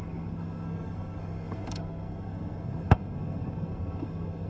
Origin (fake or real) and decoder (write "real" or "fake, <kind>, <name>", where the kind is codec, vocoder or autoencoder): fake, codec, SNAC